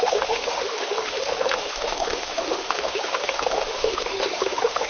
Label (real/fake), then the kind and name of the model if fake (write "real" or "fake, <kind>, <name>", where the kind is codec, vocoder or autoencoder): fake, autoencoder, DAC-VAE